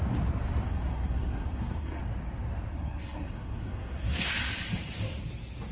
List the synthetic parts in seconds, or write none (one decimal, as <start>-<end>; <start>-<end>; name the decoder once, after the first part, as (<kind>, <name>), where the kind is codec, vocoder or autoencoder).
0.7-2.0 (codec, SNAC); 2.7-4.3